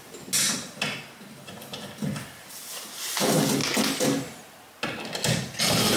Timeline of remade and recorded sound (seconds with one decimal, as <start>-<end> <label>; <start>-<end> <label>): 0.0-6.0 recorded